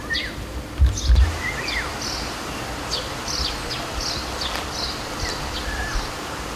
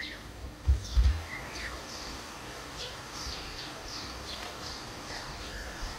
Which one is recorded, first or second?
first